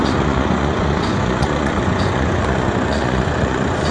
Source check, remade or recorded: remade